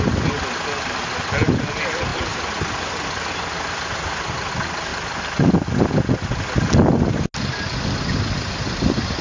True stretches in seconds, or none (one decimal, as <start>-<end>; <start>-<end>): 0.0-9.2